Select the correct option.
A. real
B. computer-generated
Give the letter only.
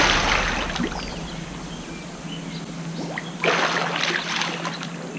A